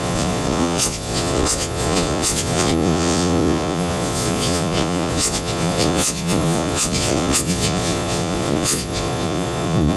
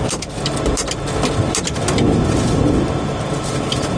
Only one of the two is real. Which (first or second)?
second